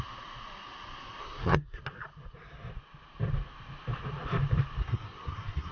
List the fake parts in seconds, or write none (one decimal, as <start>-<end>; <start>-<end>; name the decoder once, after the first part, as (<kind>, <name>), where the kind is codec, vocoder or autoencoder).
1.2-1.8 (codec, SNAC); 4.8-5.7